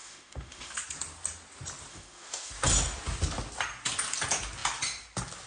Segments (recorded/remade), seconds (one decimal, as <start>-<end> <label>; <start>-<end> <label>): 0.0-0.7 remade; 0.7-1.9 recorded; 1.9-2.5 remade; 2.5-5.5 recorded